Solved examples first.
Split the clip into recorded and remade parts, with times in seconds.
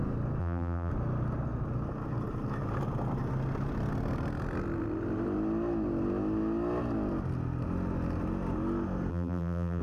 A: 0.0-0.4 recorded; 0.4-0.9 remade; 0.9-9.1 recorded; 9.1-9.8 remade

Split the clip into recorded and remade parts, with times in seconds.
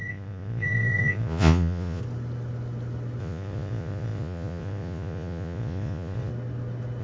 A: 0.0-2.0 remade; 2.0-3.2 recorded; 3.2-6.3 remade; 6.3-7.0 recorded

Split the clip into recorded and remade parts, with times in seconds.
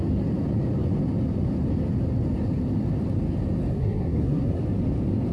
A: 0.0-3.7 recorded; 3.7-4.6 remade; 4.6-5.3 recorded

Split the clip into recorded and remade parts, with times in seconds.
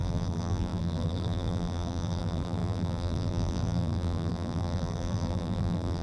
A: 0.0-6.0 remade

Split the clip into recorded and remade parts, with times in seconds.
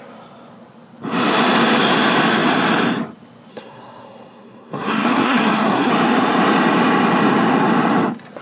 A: 0.0-3.5 recorded; 3.5-5.9 remade; 5.9-8.4 recorded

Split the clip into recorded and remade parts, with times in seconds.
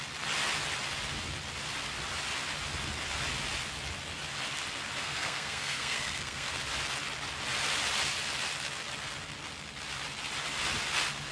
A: 0.0-5.0 recorded; 5.0-6.5 remade; 6.5-11.3 recorded